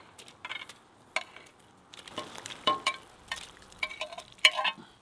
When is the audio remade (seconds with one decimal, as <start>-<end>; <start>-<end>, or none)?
1.5-4.5